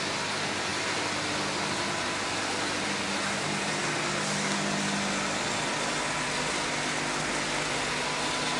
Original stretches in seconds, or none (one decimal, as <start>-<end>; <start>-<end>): 0.0-8.6